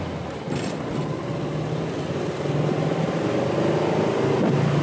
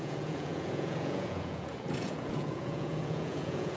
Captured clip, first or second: first